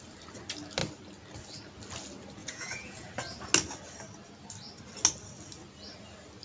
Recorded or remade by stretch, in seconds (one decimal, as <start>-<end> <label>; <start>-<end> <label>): 0.0-2.4 recorded; 2.4-3.1 remade; 3.1-6.4 recorded